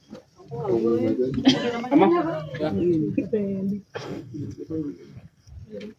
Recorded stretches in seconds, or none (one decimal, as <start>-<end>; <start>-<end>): 0.0-3.9; 5.5-6.0